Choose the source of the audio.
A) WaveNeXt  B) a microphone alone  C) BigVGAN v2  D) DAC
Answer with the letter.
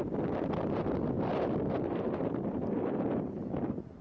B